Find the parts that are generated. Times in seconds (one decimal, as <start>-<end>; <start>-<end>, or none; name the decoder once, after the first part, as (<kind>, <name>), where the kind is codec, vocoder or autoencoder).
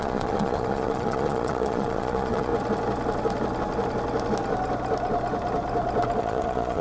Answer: 0.0-2.5 (vocoder, Vocos); 6.2-6.8